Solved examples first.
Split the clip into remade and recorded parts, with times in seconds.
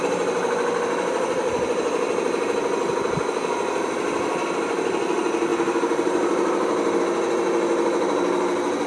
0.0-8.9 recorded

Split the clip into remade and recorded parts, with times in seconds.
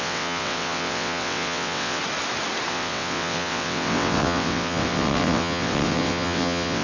0.0-2.0 remade; 2.0-2.7 recorded; 2.7-6.8 remade